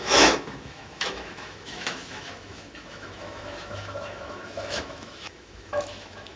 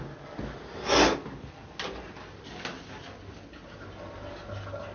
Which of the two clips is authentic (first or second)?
second